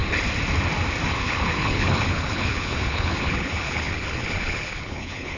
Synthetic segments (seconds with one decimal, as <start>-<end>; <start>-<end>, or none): 1.1-5.4